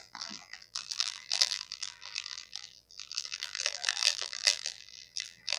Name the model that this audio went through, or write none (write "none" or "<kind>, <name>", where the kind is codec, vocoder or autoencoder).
vocoder, BigVGAN v2